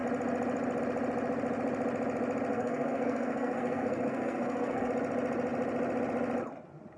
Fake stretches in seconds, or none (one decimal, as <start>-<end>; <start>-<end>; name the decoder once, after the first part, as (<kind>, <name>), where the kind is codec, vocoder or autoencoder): 2.5-4.9 (codec, SNAC)